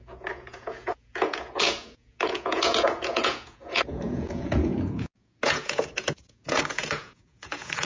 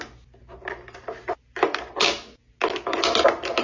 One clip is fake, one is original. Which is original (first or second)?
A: second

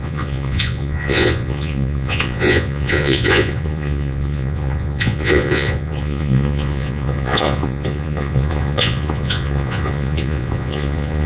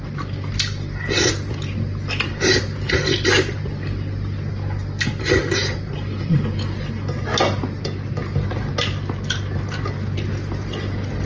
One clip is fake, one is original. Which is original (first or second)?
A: second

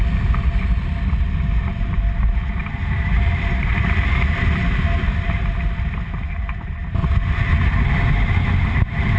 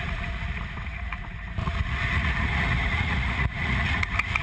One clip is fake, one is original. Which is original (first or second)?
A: first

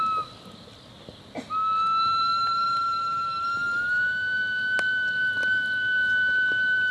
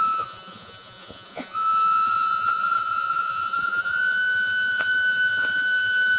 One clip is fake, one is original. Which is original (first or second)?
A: first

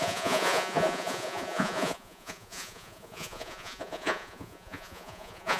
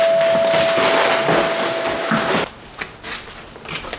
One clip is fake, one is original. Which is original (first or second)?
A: second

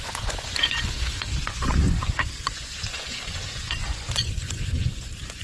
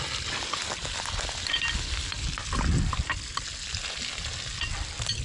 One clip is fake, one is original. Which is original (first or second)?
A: second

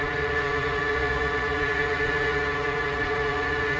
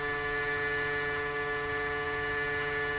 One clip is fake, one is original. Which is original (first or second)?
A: second